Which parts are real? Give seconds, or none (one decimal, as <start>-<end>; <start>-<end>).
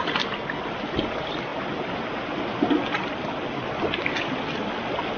0.0-5.2